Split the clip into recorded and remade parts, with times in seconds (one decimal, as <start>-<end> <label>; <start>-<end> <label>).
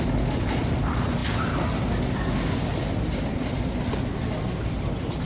0.0-5.3 recorded